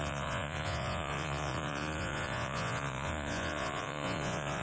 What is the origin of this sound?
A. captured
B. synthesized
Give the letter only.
B